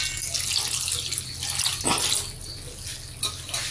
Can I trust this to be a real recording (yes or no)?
yes